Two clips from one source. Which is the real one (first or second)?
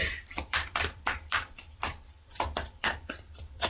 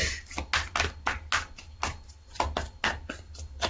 second